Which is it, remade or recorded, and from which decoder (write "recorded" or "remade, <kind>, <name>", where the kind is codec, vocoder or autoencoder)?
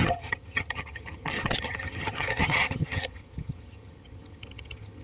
remade, vocoder, HiFi-GAN